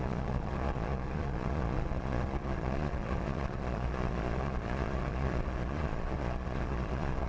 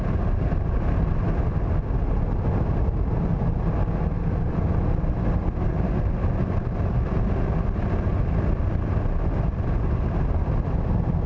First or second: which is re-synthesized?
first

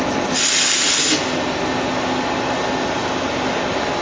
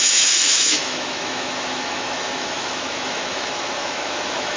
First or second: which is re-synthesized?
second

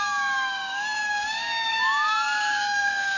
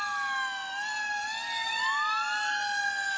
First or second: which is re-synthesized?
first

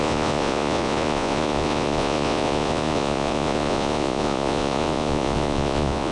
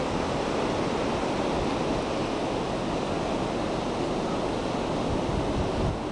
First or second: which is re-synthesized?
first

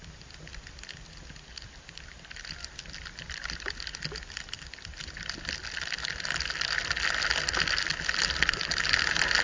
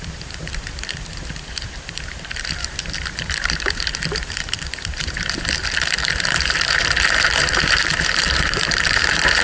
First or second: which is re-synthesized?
second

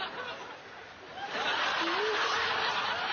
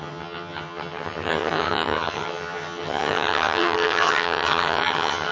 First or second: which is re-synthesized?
second